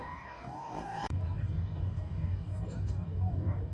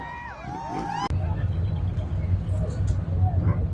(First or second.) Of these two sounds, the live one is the second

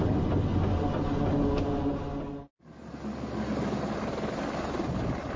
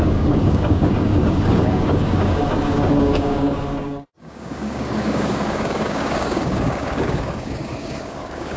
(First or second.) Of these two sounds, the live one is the first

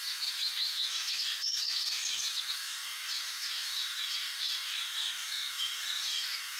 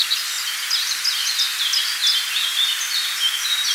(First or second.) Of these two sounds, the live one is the second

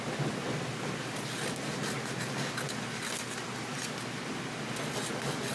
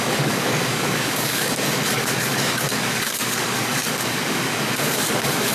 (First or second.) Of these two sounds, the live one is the first